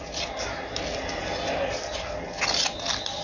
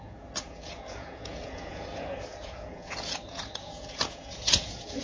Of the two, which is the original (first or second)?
first